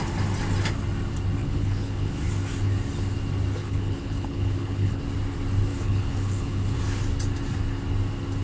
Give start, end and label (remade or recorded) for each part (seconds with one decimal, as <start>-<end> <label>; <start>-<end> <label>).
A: 0.0-1.4 recorded; 1.4-2.1 remade; 2.1-3.6 recorded; 3.6-5.0 remade; 5.0-5.7 recorded; 5.7-6.8 remade; 6.8-8.4 recorded